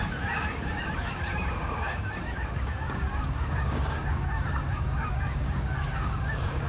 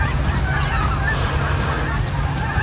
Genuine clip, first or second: second